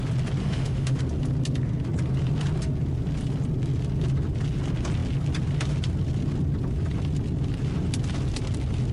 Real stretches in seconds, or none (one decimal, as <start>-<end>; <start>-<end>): 0.0-0.4; 1.0-8.9